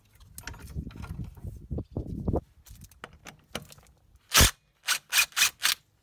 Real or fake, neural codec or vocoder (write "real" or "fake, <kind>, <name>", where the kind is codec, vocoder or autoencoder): real